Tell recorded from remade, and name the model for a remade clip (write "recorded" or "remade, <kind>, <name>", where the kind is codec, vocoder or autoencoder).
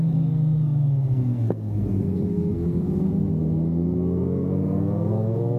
remade, codec, SNAC